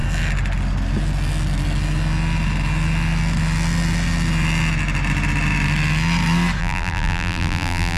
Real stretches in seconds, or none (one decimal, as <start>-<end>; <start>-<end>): 0.0-6.6